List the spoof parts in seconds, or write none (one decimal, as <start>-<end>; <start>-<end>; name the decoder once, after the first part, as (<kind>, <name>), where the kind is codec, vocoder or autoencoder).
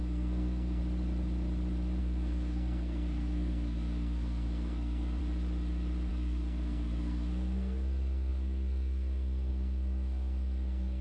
0.0-0.8 (codec, SNAC); 2.0-5.2; 6.1-11.0